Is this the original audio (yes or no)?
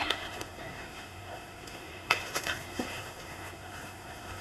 no